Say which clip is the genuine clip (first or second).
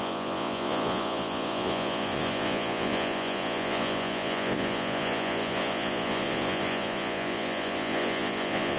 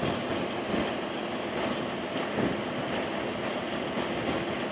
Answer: second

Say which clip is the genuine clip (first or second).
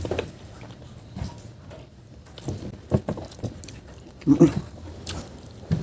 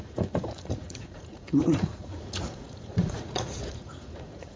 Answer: first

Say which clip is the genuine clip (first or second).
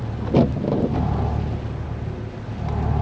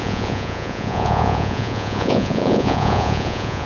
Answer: first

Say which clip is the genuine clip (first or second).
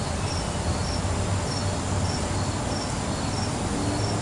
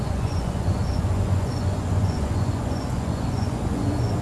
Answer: first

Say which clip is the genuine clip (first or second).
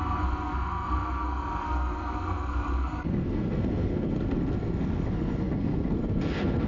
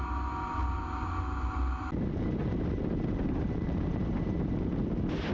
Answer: second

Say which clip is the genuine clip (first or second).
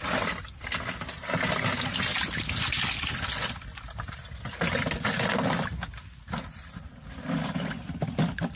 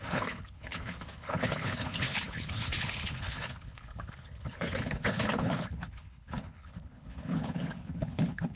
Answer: first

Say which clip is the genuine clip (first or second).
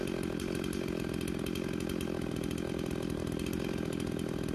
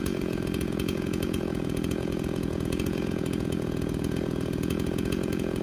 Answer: first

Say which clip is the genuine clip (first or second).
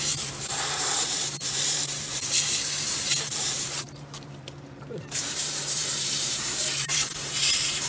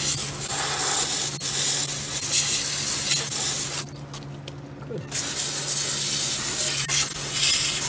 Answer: second